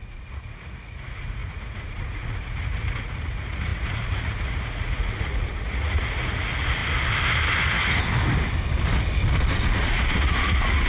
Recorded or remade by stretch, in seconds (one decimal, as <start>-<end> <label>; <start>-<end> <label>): 0.0-6.8 remade; 6.8-9.5 recorded; 9.5-10.9 remade

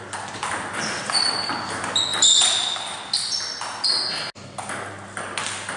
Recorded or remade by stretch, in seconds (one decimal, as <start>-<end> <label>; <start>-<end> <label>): 0.0-5.8 recorded